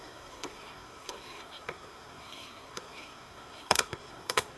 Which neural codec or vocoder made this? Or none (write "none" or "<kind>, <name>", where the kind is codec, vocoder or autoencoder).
codec, SNAC